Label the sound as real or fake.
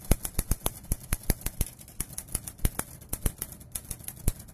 real